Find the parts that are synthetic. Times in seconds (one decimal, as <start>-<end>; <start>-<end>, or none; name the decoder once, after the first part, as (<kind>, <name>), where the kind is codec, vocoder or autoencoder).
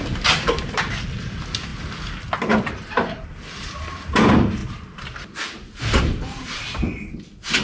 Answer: 0.0-1.7 (vocoder, BigVGAN v2); 2.3-4.6; 6.0-7.6